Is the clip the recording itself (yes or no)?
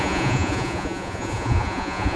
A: no